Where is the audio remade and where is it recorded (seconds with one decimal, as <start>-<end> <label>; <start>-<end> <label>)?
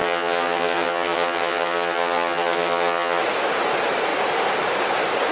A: 0.0-3.2 remade; 3.2-5.3 recorded